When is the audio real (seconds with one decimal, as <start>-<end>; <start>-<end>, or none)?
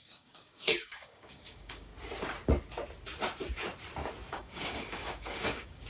1.9-4.3